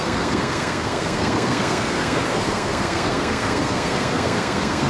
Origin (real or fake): fake